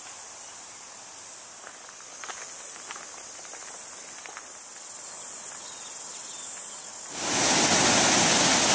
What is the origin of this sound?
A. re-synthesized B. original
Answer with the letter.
B